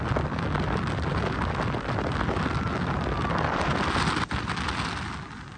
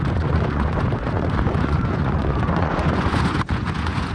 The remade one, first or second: second